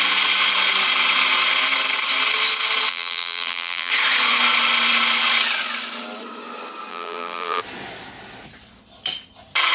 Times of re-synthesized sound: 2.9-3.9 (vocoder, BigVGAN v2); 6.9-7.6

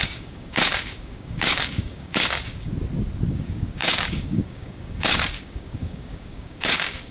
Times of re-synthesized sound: 0.0-2.7 (codec, DAC); 3.3-7.1

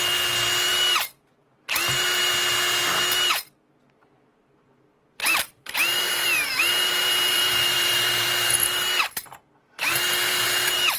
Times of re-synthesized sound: 4.3-8.1 (vocoder, BigVGAN v2); 10.3-11.0

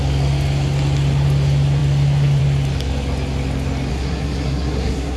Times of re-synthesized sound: 3.9-5.2 (codec, SNAC)

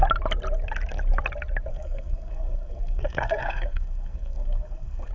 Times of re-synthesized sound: 1.7-5.1 (codec, SNAC)